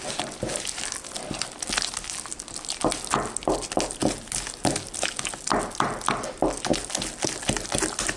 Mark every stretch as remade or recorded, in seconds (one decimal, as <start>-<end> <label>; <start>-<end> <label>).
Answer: 0.0-8.2 recorded